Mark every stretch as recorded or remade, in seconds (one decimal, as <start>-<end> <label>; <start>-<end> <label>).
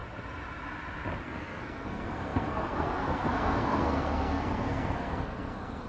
0.0-1.2 recorded; 1.2-5.9 remade